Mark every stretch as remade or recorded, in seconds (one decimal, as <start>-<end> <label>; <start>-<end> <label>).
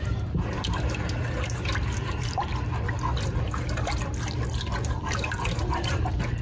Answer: 0.0-2.5 remade; 2.5-5.5 recorded; 5.5-6.4 remade